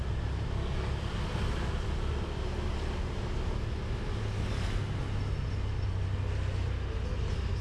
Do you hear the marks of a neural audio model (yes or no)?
no